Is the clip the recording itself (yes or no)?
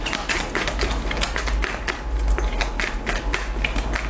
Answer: yes